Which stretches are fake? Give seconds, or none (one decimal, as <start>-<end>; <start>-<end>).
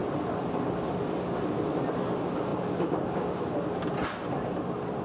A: none